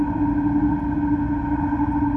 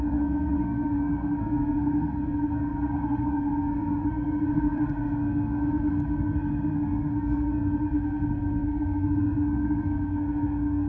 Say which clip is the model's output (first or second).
second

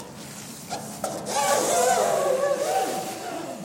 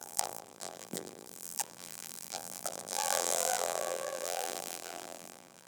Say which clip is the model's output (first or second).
second